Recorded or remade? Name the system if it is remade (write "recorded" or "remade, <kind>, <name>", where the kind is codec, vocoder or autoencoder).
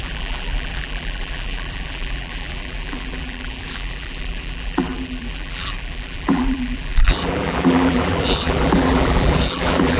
remade, vocoder, BigVGAN v2